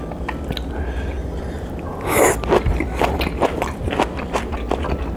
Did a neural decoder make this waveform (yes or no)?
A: no